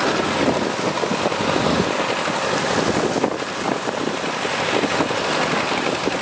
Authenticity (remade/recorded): recorded